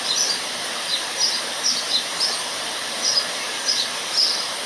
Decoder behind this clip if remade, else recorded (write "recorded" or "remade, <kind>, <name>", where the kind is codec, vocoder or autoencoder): recorded